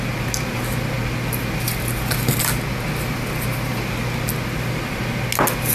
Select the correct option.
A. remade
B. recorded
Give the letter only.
B